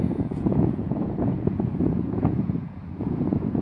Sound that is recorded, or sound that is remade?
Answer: remade